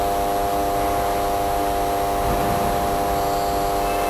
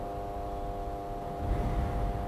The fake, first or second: second